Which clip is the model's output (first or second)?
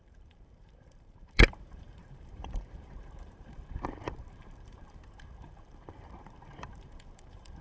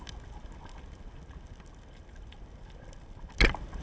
first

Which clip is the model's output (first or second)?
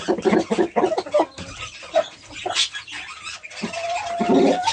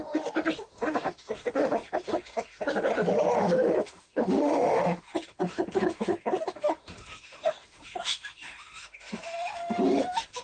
second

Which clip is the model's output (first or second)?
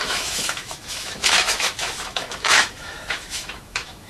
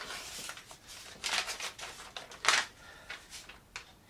first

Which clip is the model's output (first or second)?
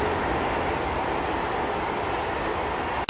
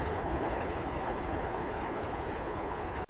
second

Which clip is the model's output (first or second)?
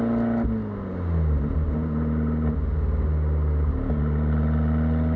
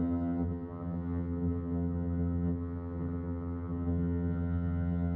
second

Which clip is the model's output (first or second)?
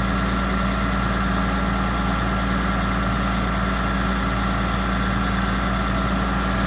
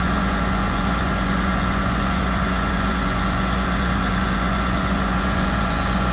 second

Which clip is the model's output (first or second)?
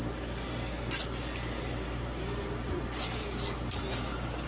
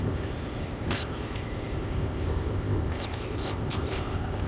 second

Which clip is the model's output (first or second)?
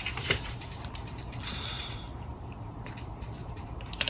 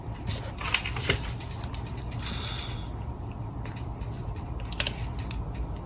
first